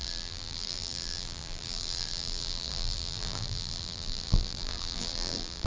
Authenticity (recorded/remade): remade